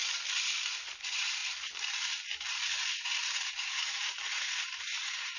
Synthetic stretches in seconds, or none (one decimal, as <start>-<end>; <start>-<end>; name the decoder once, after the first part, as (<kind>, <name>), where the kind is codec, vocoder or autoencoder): 0.5-5.4 (vocoder, BigVGAN v2)